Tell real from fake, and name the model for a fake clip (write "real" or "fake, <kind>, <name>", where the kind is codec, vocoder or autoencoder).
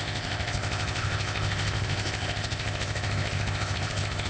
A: fake, codec, ZipCodec